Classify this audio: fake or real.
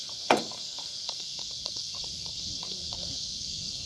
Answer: fake